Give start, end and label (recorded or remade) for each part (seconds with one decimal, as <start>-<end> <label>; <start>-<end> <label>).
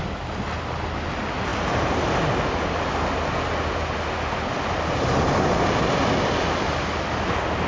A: 0.0-7.7 recorded